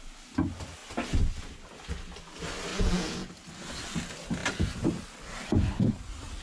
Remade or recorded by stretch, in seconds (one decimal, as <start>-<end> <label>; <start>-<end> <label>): 0.0-2.7 recorded; 2.7-3.3 remade; 3.3-6.4 recorded